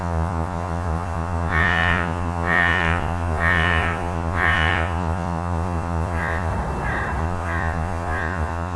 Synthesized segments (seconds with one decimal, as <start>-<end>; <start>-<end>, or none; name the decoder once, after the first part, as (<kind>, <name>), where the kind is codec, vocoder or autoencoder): 0.0-6.5 (vocoder, Vocos); 7.2-8.8